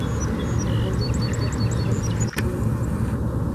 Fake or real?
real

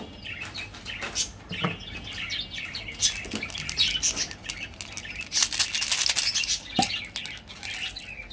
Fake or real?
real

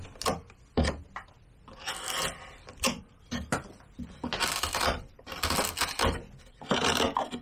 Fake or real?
real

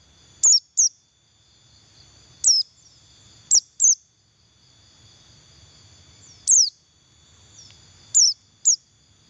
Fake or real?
real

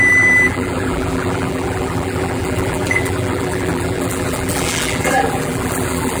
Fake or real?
fake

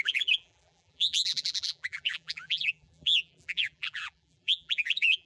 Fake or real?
fake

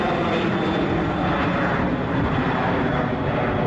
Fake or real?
real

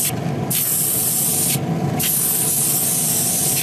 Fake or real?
real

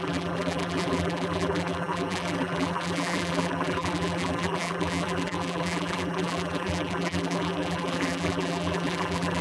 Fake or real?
fake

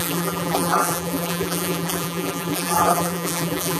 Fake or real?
fake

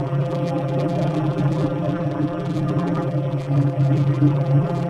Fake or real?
fake